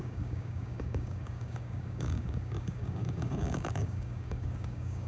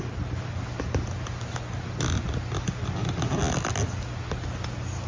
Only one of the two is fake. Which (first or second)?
first